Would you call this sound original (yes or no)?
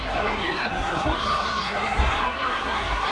no